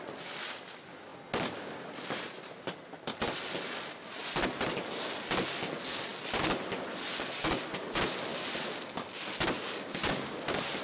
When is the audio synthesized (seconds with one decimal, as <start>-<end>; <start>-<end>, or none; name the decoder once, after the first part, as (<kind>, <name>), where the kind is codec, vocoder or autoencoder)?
8.3-9.2 (vocoder, BigVGAN v2)